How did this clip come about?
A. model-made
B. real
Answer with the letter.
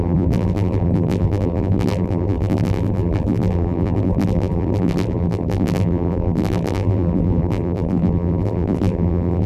A